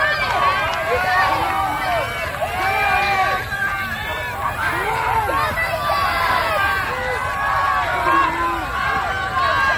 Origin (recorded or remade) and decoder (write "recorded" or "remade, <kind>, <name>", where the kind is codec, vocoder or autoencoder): recorded